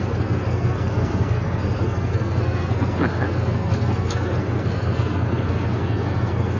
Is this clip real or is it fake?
fake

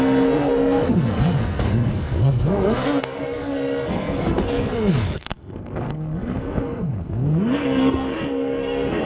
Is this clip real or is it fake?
fake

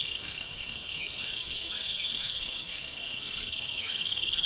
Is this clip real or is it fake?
fake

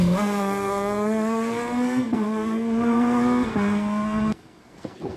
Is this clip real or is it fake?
fake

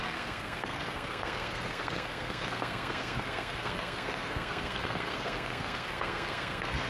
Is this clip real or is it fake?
fake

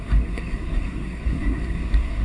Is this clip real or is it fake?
fake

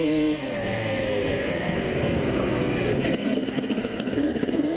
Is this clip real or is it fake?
fake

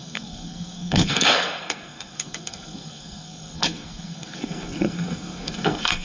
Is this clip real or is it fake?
fake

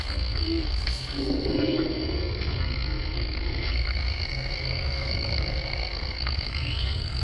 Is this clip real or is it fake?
fake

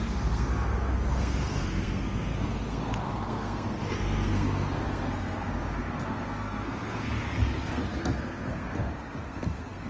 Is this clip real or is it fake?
fake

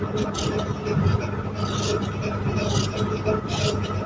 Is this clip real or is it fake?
real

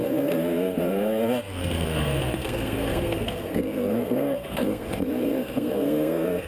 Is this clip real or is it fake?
fake